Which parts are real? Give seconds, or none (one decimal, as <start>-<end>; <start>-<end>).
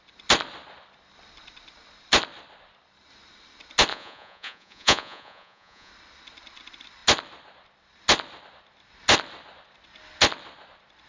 0.0-3.9; 5.9-11.1